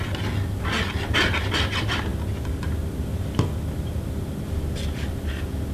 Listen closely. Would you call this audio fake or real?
real